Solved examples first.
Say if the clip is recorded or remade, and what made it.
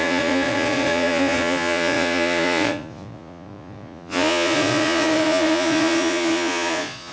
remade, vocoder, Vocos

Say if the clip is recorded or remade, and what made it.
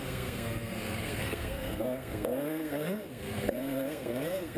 remade, codec, SNAC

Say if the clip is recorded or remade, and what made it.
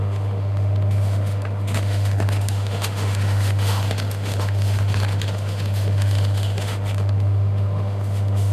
remade, autoencoder, DAC-VAE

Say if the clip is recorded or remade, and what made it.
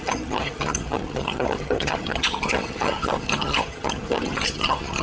remade, vocoder, HiFi-GAN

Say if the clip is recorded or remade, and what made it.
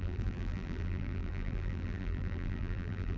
remade, vocoder, BigVGAN v2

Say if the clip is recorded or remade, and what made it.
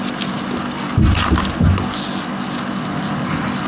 recorded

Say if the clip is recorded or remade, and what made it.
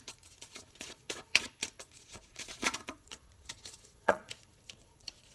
remade, vocoder, Vocos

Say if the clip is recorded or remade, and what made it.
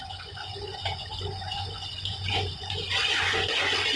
remade, vocoder, Vocos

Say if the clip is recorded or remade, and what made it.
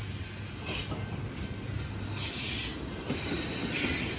recorded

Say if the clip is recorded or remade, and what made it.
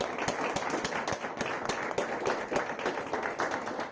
recorded